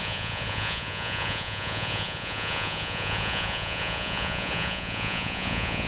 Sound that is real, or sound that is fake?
fake